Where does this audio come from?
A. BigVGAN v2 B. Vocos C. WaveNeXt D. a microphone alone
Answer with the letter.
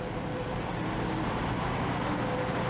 A